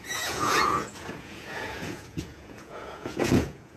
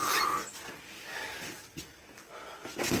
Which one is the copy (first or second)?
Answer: first